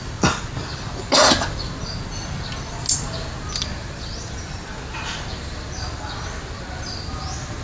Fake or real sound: real